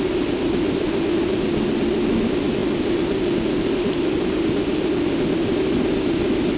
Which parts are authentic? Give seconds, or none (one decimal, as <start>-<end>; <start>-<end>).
0.0-6.6